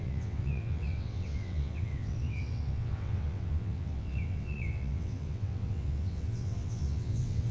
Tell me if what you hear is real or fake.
fake